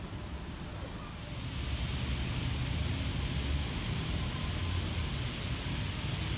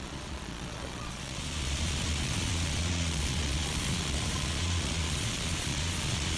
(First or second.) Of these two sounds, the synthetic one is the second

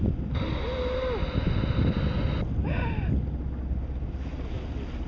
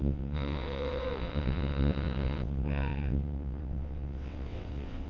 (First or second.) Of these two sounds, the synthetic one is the second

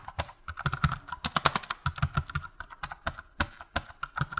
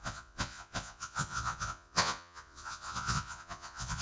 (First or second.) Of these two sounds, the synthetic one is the second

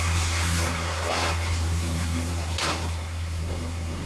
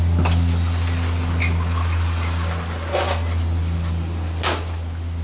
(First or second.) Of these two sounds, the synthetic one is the first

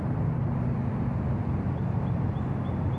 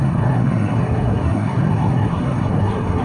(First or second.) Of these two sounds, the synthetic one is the second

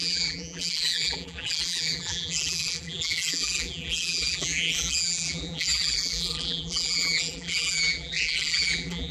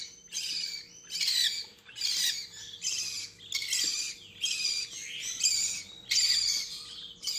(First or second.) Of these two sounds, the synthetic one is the first